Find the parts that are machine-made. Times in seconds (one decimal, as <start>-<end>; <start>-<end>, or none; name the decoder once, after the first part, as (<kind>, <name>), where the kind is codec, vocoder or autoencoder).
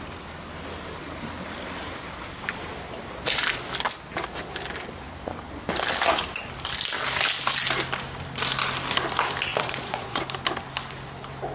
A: 9.5-10.2 (vocoder, Vocos)